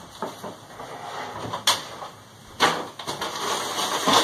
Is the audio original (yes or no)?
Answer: yes